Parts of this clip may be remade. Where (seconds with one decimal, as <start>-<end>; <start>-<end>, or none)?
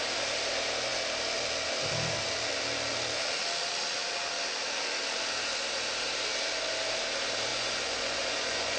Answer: 7.5-8.8